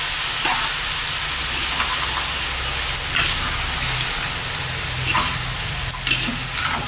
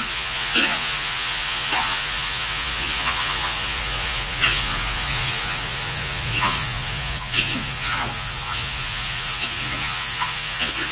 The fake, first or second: second